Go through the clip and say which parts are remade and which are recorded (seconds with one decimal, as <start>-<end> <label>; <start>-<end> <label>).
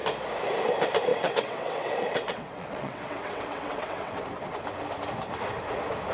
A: 0.0-1.1 recorded; 1.1-4.2 remade; 4.2-6.1 recorded